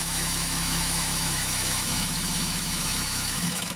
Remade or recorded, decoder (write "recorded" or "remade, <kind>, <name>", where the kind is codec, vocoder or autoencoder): remade, autoencoder, DAC-VAE